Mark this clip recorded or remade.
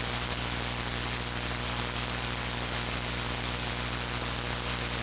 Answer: recorded